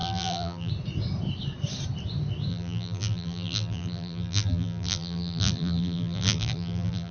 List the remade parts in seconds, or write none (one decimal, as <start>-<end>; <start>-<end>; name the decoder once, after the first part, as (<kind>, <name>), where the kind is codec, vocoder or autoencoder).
0.0-0.7 (vocoder, BigVGAN v2); 2.5-7.1